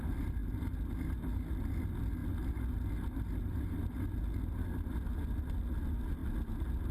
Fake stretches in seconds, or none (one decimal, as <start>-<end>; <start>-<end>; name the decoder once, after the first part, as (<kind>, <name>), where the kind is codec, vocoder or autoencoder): none